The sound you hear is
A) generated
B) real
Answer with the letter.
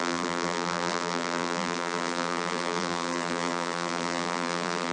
A